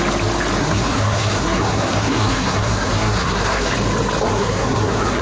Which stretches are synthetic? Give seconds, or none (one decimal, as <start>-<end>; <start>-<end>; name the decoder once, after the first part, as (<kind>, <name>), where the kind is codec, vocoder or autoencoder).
0.6-3.7 (codec, SNAC); 4.3-5.2